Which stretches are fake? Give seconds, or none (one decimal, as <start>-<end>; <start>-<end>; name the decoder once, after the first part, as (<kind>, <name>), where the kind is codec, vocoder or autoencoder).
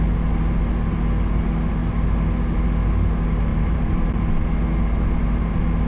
3.5-4.5 (vocoder, BigVGAN v2)